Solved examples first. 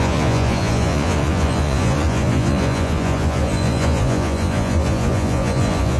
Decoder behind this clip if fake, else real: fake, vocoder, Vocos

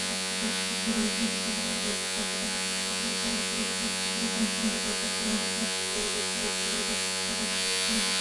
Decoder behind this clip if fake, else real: fake, vocoder, Vocos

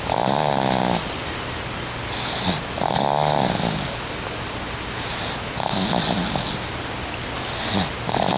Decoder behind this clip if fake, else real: real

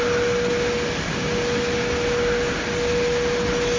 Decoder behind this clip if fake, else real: real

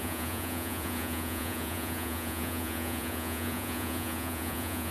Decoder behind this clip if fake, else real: fake, vocoder, Vocos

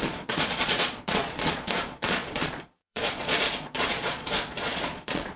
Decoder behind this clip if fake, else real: fake, vocoder, Vocos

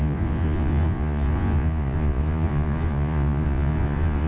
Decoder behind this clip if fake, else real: fake, vocoder, Vocos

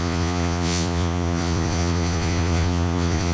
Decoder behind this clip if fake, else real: fake, vocoder, Vocos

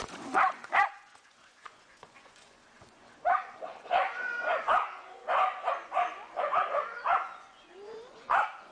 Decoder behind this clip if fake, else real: fake, vocoder, Vocos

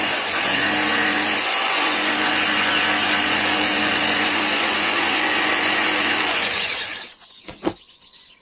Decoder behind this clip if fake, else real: fake, vocoder, Vocos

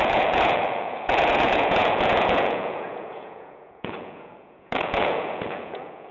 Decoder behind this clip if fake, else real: fake, vocoder, Vocos